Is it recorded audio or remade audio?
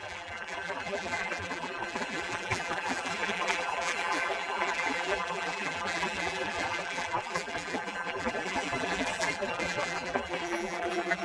remade